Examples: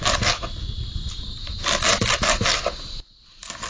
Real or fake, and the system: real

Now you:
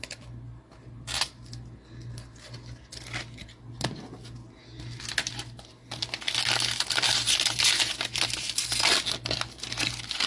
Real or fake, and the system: real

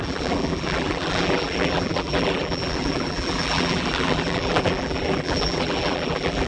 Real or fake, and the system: fake, vocoder, BigVGAN v2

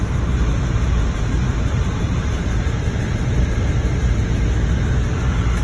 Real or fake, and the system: fake, vocoder, BigVGAN v2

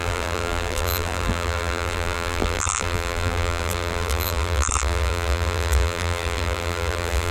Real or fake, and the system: fake, vocoder, BigVGAN v2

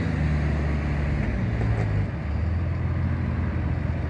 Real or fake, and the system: real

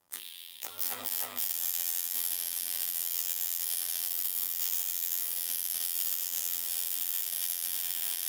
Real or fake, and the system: fake, vocoder, BigVGAN v2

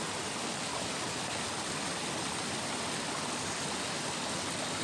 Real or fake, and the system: real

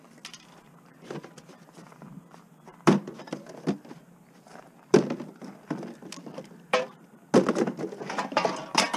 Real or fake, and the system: real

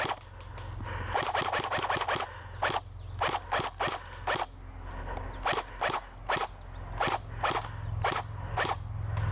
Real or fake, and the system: real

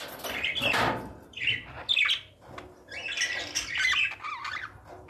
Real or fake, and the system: real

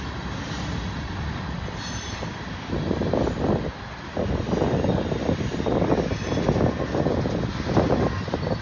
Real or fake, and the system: real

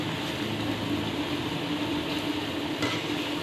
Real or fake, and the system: real